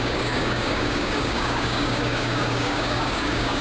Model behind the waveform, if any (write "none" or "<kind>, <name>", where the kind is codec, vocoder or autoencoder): codec, DAC